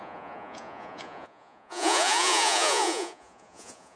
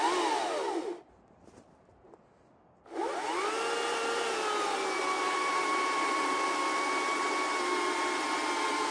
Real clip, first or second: second